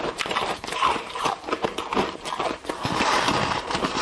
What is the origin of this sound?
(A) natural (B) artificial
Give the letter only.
B